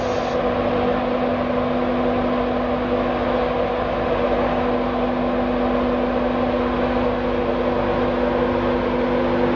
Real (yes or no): yes